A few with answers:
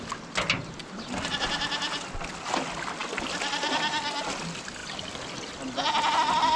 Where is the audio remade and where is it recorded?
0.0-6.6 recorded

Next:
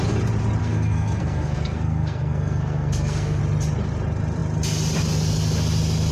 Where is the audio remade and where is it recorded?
0.0-0.6 recorded; 0.6-3.4 remade; 3.4-6.1 recorded

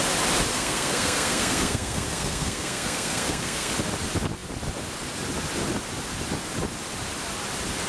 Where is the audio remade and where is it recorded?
0.0-0.5 recorded; 0.5-3.7 remade; 3.7-7.9 recorded

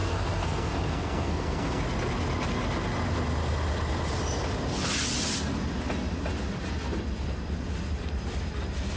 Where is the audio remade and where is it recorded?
0.0-1.8 remade; 1.8-9.0 recorded

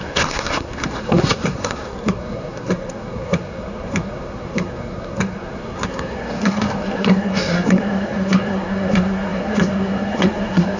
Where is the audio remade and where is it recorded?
0.0-10.8 remade

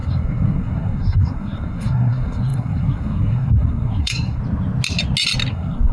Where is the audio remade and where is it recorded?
0.0-4.4 remade; 4.4-5.5 recorded; 5.5-5.9 remade

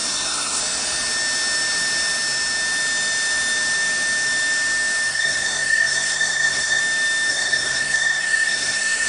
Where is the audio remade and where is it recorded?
0.0-0.6 remade; 0.6-5.1 recorded; 5.1-6.8 remade; 6.8-7.3 recorded; 7.3-9.1 remade